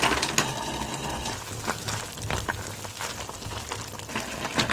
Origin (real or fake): fake